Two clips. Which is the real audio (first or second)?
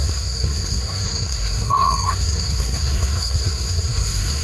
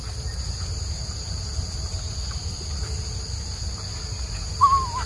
second